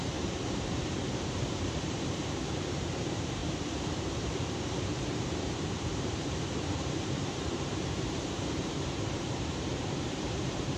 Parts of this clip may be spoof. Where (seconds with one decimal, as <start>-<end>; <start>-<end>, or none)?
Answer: 0.0-10.8